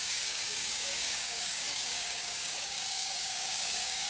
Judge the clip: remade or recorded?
remade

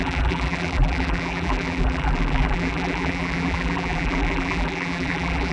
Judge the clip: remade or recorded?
remade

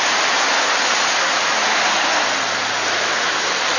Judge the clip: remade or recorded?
recorded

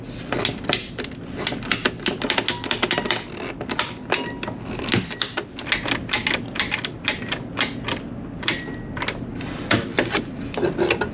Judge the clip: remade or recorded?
recorded